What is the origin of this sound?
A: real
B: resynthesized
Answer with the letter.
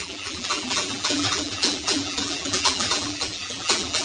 B